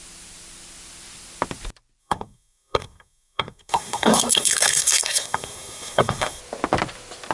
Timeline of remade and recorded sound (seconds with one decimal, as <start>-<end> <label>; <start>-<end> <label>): 0.0-2.0 recorded; 2.0-6.4 remade; 6.4-7.3 recorded

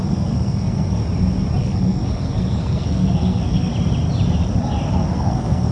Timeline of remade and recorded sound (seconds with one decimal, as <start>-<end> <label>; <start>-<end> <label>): 0.0-1.0 remade; 1.0-1.6 recorded; 1.6-3.7 remade; 3.7-4.9 recorded; 4.9-5.7 remade

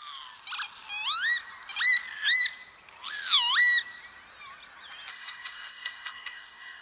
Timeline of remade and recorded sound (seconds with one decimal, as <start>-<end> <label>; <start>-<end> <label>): 0.0-5.1 recorded; 5.1-6.8 remade

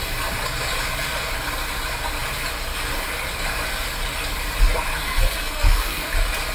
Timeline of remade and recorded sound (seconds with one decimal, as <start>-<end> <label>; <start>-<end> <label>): 0.0-5.0 recorded; 5.0-6.1 remade; 6.1-6.5 recorded

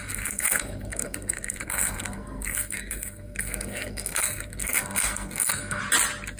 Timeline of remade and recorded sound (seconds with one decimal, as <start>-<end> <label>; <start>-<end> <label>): 0.0-5.8 remade; 5.8-6.4 recorded

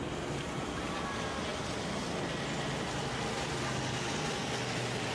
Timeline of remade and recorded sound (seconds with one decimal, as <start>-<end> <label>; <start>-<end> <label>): 0.0-5.1 recorded